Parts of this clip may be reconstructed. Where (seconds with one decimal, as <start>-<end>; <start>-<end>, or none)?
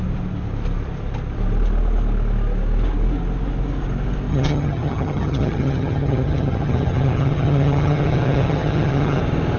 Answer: 4.3-9.2